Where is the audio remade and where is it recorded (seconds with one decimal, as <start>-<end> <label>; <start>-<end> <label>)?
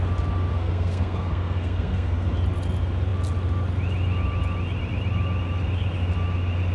0.0-0.5 recorded; 0.5-2.3 remade; 2.3-6.7 recorded